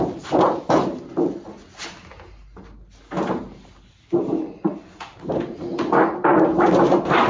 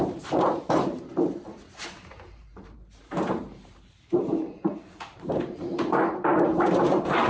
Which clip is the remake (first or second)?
second